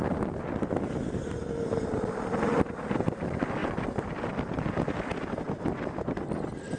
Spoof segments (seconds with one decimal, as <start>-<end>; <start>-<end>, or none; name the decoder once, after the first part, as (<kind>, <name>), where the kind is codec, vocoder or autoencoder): none